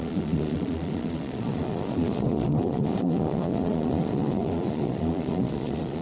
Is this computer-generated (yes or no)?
yes